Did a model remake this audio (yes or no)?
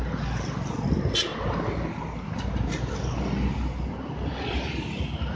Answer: no